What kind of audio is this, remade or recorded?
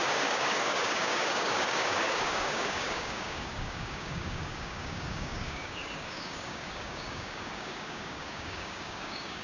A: remade